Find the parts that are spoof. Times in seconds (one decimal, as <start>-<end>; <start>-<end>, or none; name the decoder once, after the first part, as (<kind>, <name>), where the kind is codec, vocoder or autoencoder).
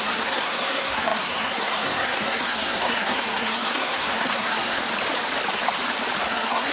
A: 0.0-4.8 (codec, SNAC); 6.2-6.7